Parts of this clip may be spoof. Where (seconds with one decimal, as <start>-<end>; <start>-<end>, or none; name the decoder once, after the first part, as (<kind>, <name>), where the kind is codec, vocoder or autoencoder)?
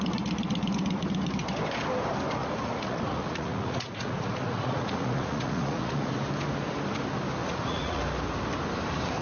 2.4-6.1 (vocoder, Vocos); 7.4-8.0